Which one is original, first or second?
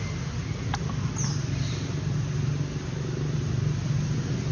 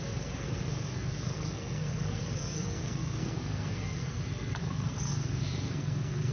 first